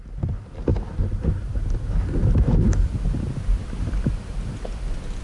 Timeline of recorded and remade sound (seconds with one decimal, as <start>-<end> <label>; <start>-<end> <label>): 0.0-0.7 recorded; 0.7-1.9 remade; 1.9-3.6 recorded; 3.6-5.2 remade